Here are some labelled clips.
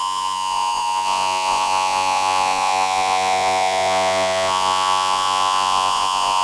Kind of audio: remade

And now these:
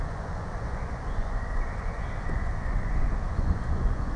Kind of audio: remade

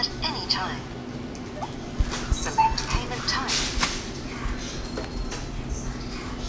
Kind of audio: recorded